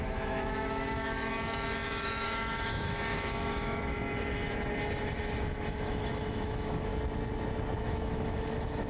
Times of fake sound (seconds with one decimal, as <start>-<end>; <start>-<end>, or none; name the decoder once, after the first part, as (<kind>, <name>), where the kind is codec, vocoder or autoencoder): 0.0-6.9 (autoencoder, DAC-VAE); 7.8-8.9